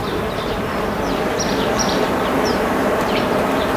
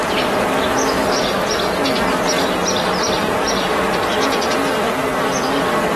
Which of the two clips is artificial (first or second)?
first